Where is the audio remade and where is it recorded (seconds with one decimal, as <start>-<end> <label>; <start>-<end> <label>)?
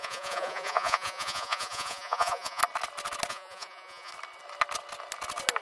0.0-2.6 remade; 2.6-3.3 recorded; 3.3-4.1 remade; 4.1-5.6 recorded